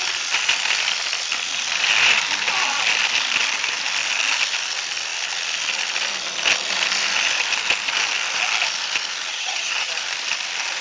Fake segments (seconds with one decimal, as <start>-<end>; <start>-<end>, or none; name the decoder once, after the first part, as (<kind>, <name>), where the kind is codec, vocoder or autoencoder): 9.3-9.9 (vocoder, HiFi-GAN)

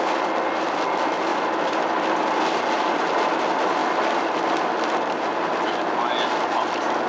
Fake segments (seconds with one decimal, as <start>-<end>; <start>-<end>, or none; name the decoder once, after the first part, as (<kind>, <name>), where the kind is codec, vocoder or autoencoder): none

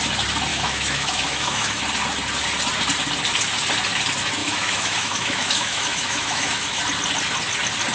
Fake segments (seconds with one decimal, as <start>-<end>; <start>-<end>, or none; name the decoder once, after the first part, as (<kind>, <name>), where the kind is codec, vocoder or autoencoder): 0.5-1.8 (autoencoder, DAC-VAE); 4.4-6.8

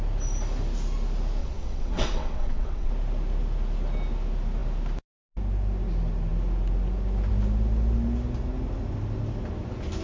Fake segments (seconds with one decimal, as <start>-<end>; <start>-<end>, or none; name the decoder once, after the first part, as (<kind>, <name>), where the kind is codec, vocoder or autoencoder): 1.4-2.9 (vocoder, WaveNeXt)

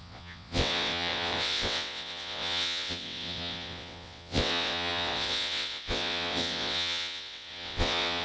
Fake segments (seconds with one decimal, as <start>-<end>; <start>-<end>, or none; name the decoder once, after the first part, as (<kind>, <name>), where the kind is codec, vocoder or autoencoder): 0.0-8.2 (vocoder, WaveNeXt)